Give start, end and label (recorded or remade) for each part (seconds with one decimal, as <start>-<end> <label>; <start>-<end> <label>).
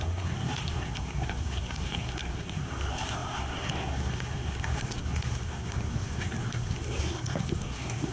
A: 0.0-8.1 remade